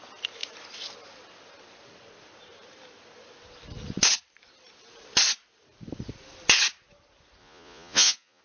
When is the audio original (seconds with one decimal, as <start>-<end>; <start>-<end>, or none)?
0.0-7.4